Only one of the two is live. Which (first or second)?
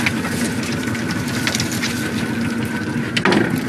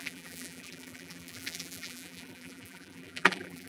first